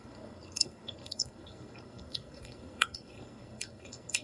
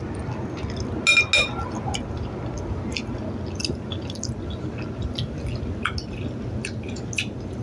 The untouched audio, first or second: second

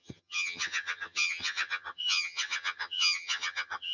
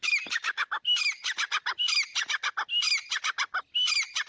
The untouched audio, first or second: second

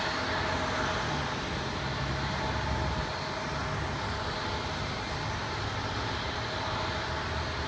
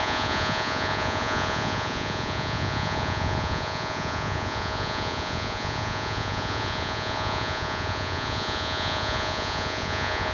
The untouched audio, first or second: first